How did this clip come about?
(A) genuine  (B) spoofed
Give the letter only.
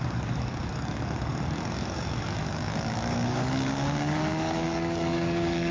B